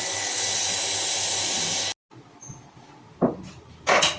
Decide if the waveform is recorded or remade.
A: recorded